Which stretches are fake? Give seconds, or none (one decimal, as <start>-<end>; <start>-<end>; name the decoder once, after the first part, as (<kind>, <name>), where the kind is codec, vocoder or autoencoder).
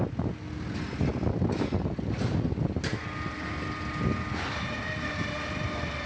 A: none